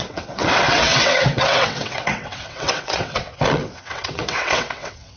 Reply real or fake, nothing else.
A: fake